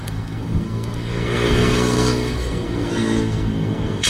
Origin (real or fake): fake